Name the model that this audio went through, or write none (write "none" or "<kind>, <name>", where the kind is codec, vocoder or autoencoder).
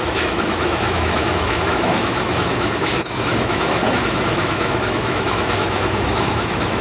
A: autoencoder, DAC-VAE